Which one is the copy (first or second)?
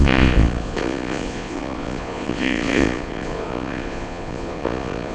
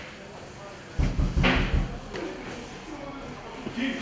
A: first